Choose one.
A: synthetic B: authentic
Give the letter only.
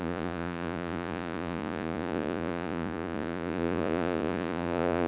A